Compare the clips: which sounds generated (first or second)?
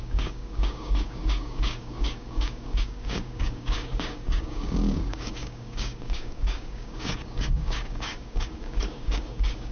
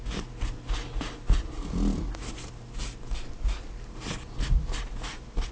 first